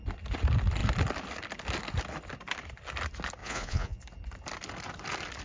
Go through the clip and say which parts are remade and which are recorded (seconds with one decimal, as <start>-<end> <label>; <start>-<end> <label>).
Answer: 0.0-3.4 recorded; 3.4-4.0 remade; 4.0-5.4 recorded